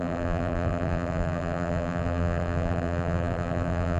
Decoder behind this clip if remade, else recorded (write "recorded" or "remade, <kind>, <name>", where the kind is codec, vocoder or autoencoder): remade, vocoder, BigVGAN v2